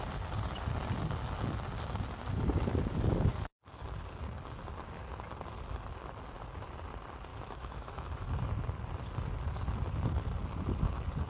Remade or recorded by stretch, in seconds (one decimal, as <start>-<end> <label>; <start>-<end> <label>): 0.0-7.3 recorded; 7.3-8.2 remade; 8.2-11.3 recorded